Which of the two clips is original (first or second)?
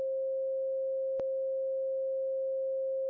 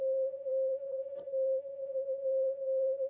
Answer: first